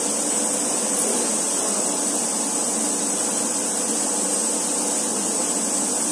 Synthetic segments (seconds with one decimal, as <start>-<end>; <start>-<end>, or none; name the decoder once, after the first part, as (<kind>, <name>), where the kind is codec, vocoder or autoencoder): none